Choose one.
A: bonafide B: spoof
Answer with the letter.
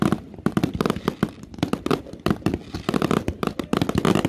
A